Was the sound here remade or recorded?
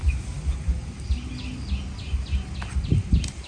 recorded